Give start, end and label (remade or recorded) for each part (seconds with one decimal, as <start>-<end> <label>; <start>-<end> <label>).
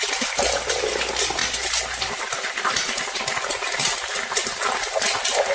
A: 0.0-5.5 recorded